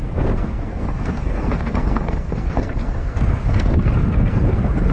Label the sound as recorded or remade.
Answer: remade